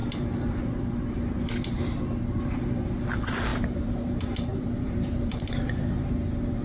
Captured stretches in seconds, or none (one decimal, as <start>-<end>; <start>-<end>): 0.0-3.5; 4.1-4.5; 5.5-6.6